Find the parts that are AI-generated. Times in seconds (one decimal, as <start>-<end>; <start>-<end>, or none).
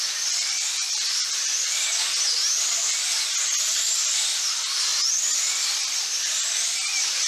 none